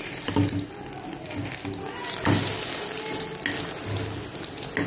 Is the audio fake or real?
real